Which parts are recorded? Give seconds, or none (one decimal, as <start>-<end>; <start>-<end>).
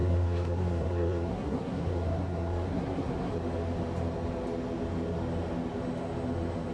3.3-6.7